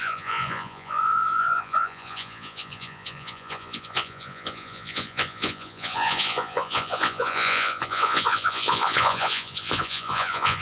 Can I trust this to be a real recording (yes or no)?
no